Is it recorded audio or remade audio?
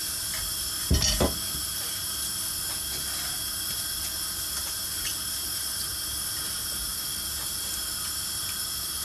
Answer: recorded